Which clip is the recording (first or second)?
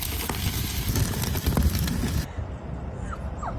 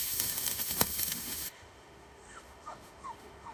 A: first